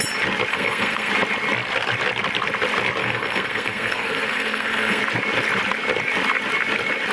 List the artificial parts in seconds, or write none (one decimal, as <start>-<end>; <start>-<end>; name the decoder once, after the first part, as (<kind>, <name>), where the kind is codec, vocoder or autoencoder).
0.5-1.1 (codec, SNAC); 3.0-5.0